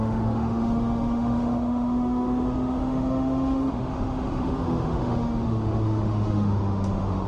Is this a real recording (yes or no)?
no